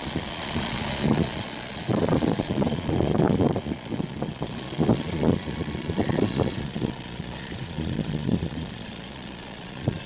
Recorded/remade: remade